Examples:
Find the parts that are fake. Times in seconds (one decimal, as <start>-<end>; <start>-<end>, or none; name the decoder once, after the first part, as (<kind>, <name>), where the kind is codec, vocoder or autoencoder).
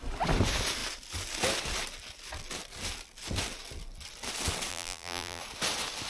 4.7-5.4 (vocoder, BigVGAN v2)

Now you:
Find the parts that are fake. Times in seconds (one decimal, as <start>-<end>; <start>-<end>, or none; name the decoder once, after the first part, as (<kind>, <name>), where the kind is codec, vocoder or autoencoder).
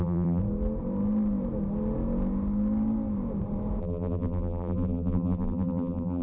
0.0-0.4 (vocoder, BigVGAN v2); 3.8-6.2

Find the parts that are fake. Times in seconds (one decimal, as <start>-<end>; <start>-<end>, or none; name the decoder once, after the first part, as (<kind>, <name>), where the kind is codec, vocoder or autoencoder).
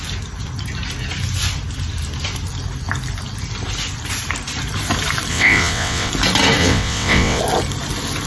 5.3-6.1 (vocoder, WaveNeXt); 6.6-7.4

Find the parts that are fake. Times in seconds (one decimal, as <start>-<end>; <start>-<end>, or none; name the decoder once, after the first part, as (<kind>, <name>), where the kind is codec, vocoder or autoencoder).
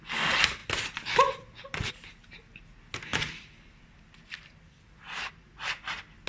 none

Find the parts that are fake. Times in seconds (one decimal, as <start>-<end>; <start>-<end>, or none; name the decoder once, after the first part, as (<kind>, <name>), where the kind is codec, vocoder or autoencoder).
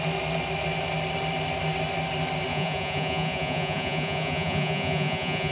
2.5-5.5 (vocoder, Vocos)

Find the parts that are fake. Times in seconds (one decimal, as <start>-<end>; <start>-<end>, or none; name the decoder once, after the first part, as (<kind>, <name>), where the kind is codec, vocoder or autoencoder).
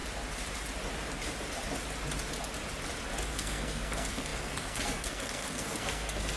3.3-6.4 (codec, SNAC)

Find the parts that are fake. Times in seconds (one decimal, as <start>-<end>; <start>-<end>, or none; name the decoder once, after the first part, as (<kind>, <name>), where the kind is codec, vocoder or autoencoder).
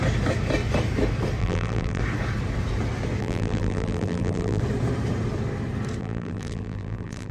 1.4-2.0 (vocoder, BigVGAN v2); 3.2-4.6; 6.0-7.3